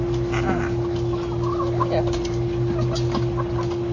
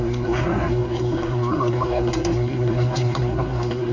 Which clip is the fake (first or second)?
second